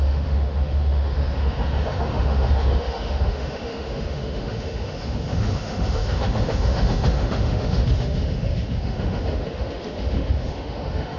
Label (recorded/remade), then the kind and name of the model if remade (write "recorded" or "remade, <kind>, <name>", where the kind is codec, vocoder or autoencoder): remade, autoencoder, DAC-VAE